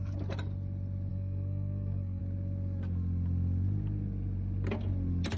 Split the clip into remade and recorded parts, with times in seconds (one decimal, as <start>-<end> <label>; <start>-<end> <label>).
0.0-1.1 recorded; 1.1-2.2 remade; 2.2-5.4 recorded